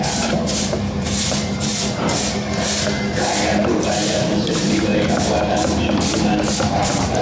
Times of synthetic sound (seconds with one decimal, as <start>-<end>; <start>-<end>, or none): 0.0-1.7; 4.5-4.9; 6.6-7.2